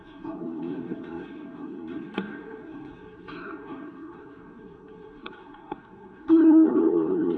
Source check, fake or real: fake